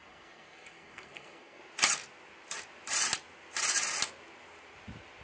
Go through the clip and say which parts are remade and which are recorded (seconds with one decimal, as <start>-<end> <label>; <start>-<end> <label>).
0.0-1.6 remade; 1.6-5.2 recorded